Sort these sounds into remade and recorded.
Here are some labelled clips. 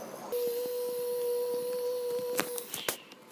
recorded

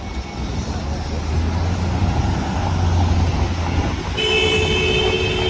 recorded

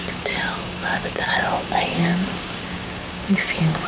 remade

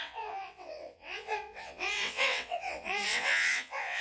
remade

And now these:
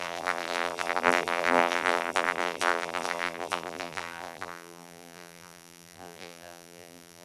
remade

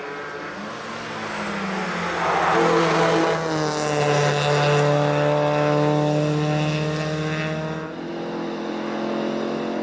recorded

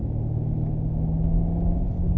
recorded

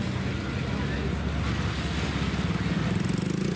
recorded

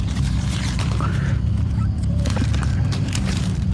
remade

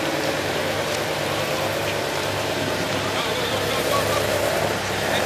remade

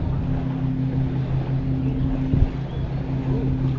recorded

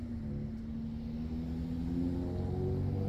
recorded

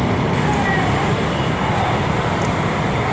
recorded